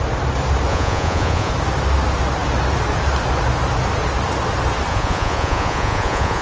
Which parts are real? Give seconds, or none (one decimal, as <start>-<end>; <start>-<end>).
0.0-0.7; 1.5-4.9